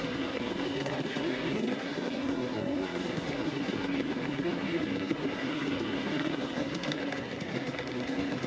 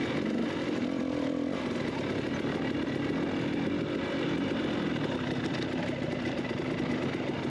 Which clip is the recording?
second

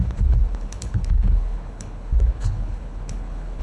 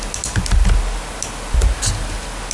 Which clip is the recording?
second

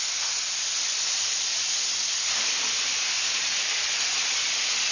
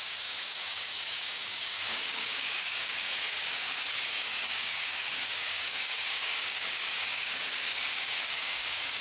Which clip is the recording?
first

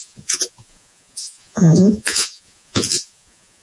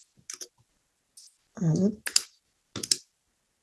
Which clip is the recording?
second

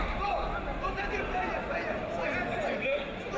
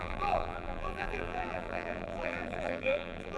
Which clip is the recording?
first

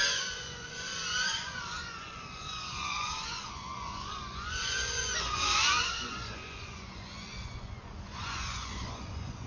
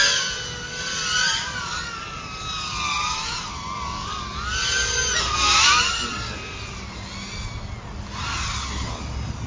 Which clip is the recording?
second